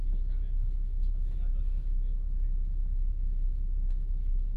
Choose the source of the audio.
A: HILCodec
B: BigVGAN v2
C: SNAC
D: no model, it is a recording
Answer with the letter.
D